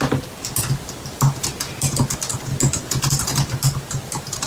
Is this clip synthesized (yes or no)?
no